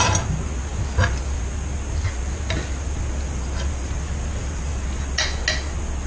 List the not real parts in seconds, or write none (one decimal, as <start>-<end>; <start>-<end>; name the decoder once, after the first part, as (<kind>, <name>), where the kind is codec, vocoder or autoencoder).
none